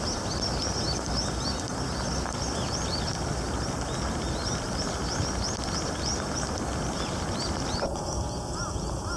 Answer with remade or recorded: recorded